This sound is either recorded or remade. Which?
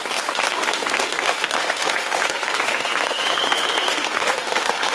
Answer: remade